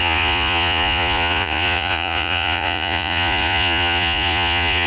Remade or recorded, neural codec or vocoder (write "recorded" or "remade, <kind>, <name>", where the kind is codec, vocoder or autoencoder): remade, vocoder, Vocos